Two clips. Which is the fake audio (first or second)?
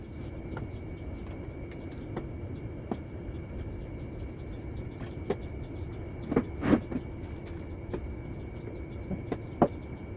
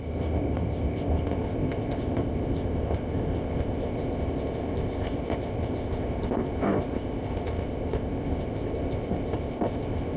second